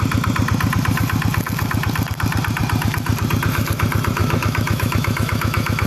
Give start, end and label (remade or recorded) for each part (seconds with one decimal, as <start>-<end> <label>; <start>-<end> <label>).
0.0-4.2 recorded; 4.2-5.9 remade